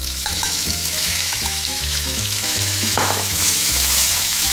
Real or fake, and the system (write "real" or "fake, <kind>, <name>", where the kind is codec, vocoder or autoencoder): fake, autoencoder, DAC-VAE